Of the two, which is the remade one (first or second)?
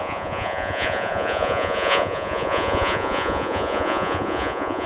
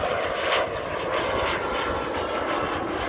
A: first